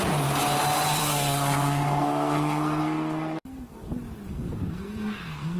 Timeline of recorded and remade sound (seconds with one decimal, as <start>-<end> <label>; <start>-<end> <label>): 0.0-1.0 recorded; 1.0-3.9 remade; 3.9-4.3 recorded; 4.3-5.6 remade